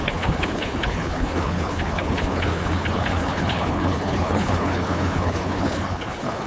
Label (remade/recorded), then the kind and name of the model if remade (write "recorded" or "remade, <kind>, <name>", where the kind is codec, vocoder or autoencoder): remade, codec, HILCodec